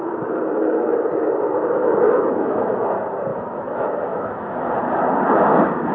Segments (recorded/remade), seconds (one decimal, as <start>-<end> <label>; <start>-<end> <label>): 0.0-1.8 recorded; 1.8-2.8 remade; 2.8-3.3 recorded; 3.3-4.7 remade; 4.7-5.9 recorded